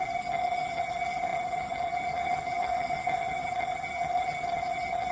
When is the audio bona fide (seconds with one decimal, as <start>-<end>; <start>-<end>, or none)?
none